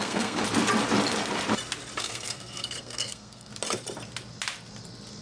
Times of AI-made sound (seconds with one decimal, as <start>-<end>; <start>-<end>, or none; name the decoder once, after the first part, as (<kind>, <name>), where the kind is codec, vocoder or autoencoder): 0.0-0.4 (codec, SNAC); 2.0-3.5